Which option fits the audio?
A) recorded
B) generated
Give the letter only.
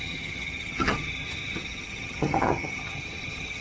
B